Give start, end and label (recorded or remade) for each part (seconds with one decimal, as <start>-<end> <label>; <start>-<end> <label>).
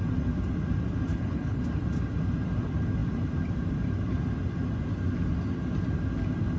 0.0-1.1 recorded; 1.1-1.6 remade; 1.6-6.6 recorded